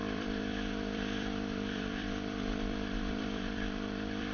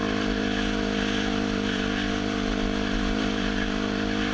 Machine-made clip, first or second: first